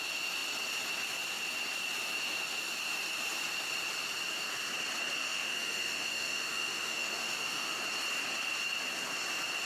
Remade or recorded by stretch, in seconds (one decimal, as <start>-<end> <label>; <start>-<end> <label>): 0.0-5.2 recorded; 5.2-7.8 remade; 7.8-9.6 recorded